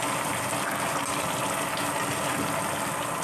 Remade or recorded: recorded